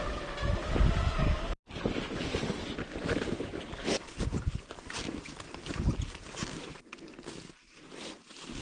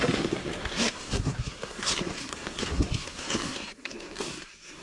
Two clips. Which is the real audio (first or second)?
first